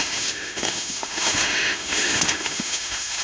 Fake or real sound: fake